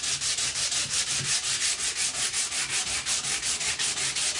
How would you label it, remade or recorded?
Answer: recorded